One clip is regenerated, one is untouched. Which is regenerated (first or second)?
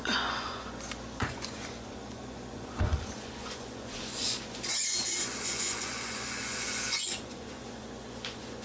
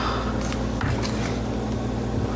first